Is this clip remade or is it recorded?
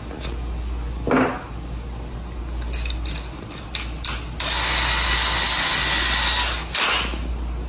recorded